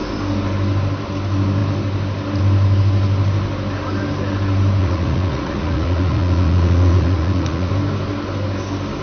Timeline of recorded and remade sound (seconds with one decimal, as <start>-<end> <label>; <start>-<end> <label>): 0.0-4.8 recorded; 4.8-7.7 remade; 7.7-9.0 recorded